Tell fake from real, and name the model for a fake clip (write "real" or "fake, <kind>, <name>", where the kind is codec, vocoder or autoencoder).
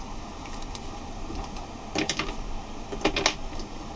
real